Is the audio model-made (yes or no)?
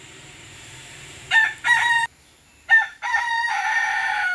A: yes